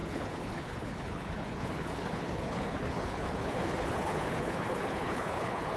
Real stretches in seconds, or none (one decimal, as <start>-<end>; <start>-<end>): none